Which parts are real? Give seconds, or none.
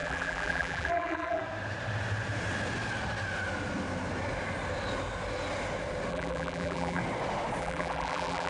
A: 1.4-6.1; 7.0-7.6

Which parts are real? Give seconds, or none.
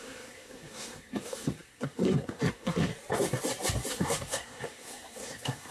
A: 2.9-3.9